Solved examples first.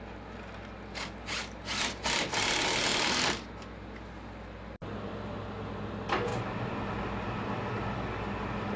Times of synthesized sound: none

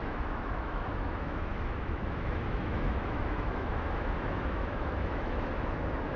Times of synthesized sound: 0.0-6.2